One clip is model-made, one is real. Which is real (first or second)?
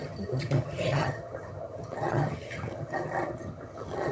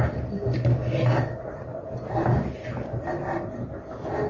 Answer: second